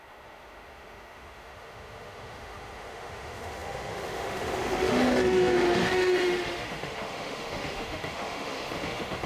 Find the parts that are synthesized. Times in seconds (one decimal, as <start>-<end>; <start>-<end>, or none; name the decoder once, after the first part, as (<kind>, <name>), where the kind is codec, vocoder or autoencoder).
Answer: 0.0-9.3 (autoencoder, DAC-VAE)